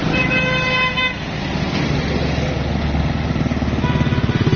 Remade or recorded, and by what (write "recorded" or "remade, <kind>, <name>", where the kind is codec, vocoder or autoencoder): recorded